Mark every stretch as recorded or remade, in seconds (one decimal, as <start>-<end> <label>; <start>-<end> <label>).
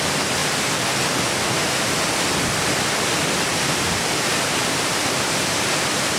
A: 0.0-6.2 remade